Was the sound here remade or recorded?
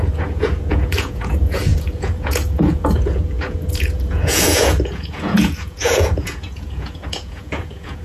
remade